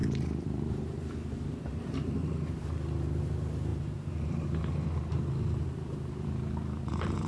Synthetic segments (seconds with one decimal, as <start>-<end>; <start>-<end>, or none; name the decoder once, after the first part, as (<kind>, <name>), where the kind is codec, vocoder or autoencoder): 0.0-2.7 (vocoder, BigVGAN v2); 3.7-7.3